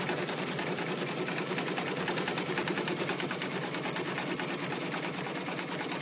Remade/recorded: recorded